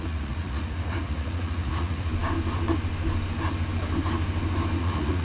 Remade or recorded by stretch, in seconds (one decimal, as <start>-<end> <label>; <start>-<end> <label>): 0.0-2.1 remade; 2.1-4.8 recorded; 4.8-5.2 remade